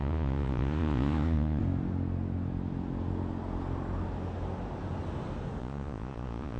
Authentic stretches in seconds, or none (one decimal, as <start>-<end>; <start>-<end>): 1.6-5.6